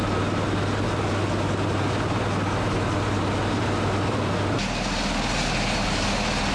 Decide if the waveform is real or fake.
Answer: real